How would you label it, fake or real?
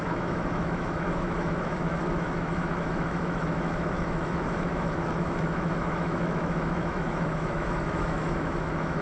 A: fake